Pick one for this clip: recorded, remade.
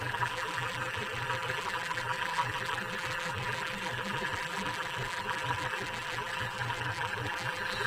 remade